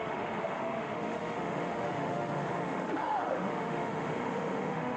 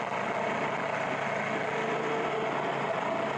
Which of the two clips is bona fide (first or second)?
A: second